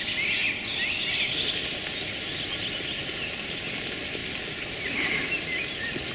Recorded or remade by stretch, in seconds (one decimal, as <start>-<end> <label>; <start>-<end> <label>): 0.0-6.1 recorded